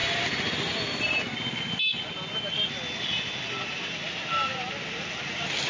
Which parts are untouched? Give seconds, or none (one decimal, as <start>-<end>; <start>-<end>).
0.0-5.7